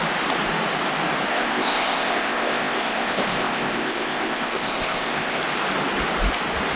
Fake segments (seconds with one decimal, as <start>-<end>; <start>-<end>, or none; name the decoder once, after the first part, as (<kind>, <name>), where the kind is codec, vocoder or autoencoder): 1.3-5.4 (codec, ZipCodec)